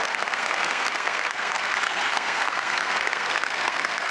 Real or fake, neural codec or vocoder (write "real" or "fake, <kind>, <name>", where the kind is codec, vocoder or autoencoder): fake, codec, SNAC